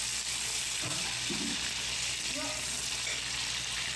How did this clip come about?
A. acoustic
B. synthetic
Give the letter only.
A